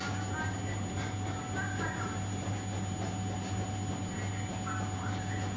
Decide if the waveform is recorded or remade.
recorded